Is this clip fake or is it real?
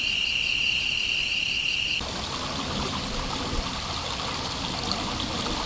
real